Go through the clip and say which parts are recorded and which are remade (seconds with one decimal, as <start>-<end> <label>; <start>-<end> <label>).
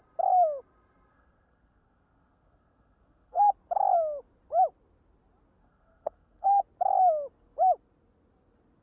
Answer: 0.0-1.1 recorded; 1.1-3.5 remade; 3.5-5.6 recorded; 5.6-6.6 remade; 6.6-8.8 recorded